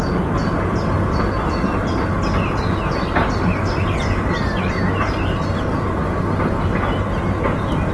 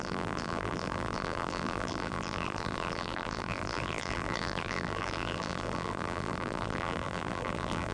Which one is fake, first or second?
second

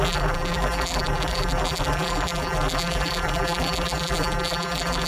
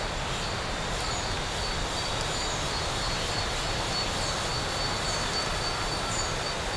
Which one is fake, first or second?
first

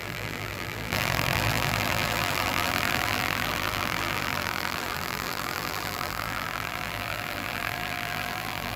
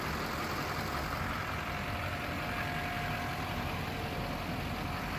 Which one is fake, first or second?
first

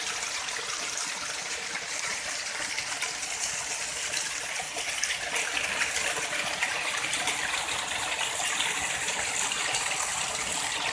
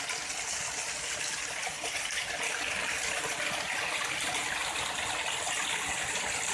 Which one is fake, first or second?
first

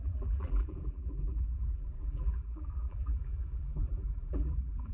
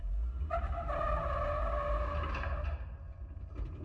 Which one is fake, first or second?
first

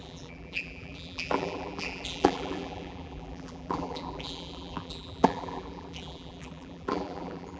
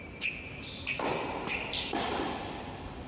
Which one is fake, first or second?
first